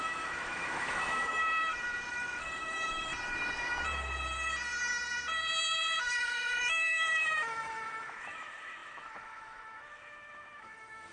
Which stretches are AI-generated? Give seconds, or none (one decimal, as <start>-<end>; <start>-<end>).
0.0-1.4; 2.1-3.1; 6.0-11.1